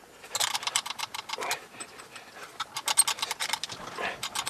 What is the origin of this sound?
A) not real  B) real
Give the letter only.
B